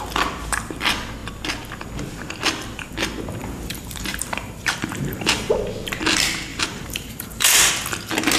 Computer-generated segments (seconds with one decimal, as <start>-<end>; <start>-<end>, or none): 3.4-5.5; 6.5-7.7